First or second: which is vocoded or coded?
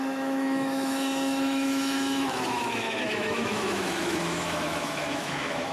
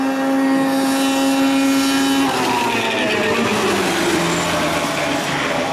first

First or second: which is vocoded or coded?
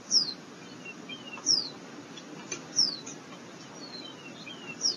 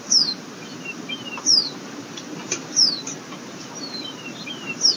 second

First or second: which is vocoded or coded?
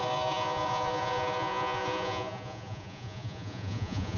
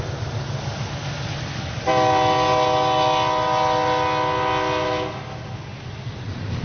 first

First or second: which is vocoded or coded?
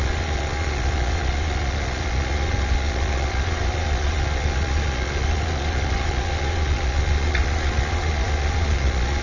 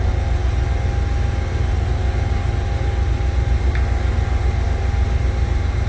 first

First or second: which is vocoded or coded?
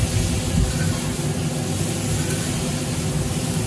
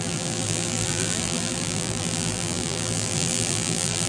second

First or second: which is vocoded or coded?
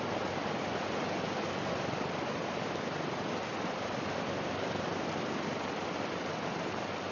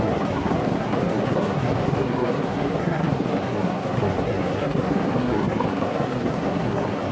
second